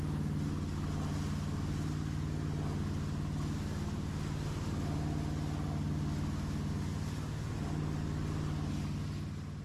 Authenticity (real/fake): real